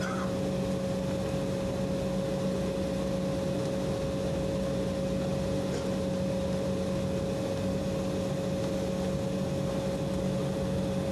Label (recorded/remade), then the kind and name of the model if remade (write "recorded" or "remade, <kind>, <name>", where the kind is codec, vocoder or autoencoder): recorded